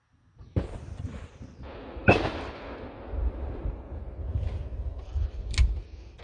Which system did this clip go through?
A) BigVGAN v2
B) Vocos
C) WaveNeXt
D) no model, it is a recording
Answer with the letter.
D